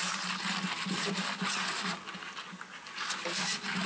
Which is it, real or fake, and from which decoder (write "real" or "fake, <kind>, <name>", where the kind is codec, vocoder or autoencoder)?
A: real